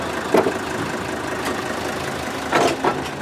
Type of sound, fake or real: real